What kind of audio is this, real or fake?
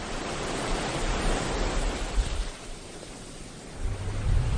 real